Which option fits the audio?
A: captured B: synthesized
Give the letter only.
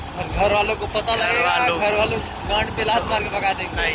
A